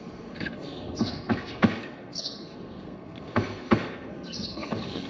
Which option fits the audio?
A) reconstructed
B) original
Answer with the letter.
A